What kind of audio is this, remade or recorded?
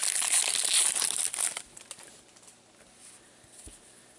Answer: recorded